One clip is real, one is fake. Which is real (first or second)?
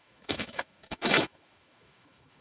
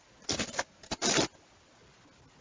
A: second